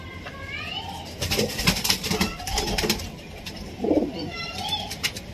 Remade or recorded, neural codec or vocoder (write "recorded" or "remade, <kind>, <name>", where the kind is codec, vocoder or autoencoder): remade, vocoder, BigVGAN v2